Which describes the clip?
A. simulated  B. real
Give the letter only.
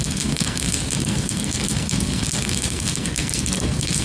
A